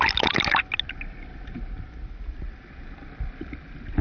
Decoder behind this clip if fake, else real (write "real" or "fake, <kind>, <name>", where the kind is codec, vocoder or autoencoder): real